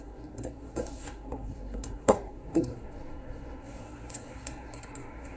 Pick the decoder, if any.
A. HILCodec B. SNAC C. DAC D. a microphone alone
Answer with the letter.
B